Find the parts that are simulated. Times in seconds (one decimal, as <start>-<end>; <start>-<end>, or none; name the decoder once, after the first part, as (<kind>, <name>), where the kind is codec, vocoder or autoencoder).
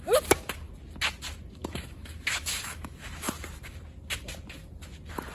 1.6-3.3 (autoencoder, DAC-VAE)